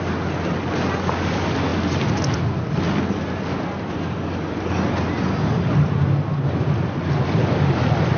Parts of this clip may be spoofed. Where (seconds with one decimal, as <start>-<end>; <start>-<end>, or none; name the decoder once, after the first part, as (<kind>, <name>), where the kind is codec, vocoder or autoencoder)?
none

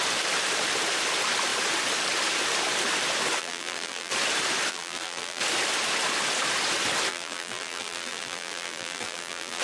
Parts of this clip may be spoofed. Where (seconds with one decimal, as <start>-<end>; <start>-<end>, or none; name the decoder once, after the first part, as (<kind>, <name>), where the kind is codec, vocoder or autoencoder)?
3.4-4.1 (vocoder, BigVGAN v2); 4.7-5.4; 7.1-9.6

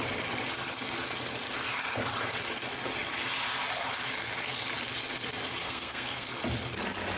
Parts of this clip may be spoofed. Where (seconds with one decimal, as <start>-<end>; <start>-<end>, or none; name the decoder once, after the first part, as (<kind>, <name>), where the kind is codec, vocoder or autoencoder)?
5.6-6.3 (codec, SNAC)

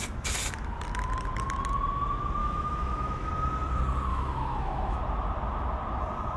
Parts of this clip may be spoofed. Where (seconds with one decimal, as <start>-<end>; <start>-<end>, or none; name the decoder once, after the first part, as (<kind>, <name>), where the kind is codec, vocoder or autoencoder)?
2.4-3.3 (autoencoder, DAC-VAE); 4.1-5.0

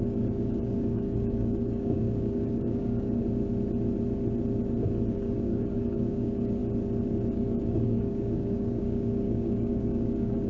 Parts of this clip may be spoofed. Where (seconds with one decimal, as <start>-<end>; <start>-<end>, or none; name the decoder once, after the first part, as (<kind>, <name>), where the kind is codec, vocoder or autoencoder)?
0.0-3.2 (codec, DAC); 5.1-6.6; 7.3-10.5

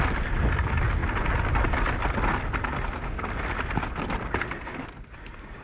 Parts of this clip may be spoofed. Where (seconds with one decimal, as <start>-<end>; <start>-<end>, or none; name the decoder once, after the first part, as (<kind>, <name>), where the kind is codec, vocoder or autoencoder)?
none